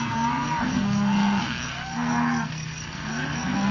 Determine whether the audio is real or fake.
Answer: fake